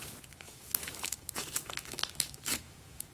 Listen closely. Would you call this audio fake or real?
fake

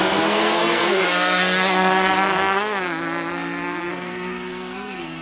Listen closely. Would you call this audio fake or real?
fake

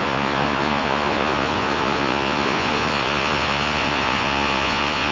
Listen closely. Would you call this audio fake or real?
fake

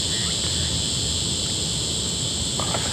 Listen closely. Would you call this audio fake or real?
real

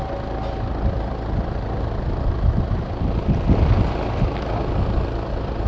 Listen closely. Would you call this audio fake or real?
real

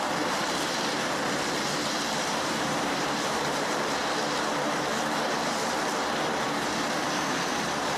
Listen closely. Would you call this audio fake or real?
fake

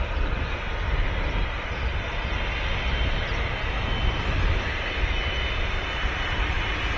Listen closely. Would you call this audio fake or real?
real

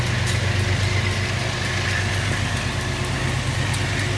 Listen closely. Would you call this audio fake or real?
real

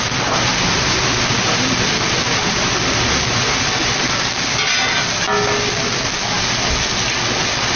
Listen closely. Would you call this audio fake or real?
real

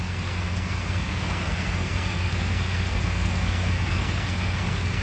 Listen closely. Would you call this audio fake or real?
fake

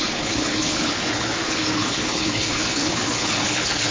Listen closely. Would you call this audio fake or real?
fake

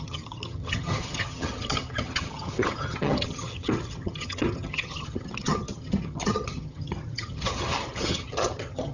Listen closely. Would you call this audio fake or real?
fake